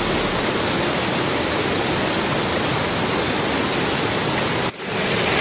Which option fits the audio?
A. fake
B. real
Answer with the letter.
B